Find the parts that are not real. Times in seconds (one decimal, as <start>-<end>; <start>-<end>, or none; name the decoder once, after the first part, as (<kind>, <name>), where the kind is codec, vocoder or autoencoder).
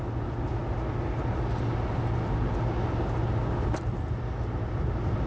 none